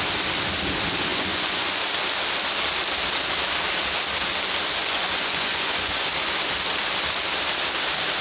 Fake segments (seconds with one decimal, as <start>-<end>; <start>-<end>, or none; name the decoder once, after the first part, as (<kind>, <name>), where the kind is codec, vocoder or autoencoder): 1.1-1.8 (vocoder, Vocos); 4.8-6.1